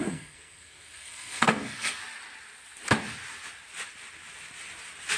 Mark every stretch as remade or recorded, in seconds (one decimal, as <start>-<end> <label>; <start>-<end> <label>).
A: 0.0-2.0 remade; 2.0-5.2 recorded